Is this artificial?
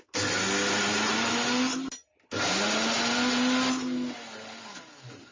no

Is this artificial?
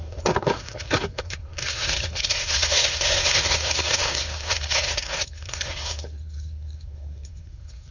yes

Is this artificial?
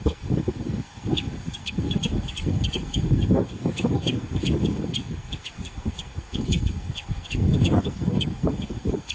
yes